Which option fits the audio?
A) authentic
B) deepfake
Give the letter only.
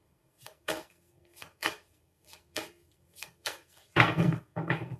B